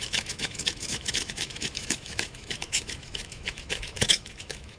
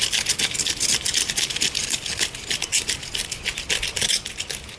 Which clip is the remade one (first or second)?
first